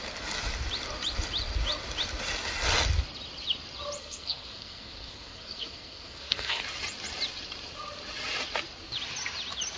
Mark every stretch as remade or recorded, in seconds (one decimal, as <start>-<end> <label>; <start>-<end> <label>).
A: 0.0-4.0 recorded; 4.0-6.6 remade; 6.6-9.8 recorded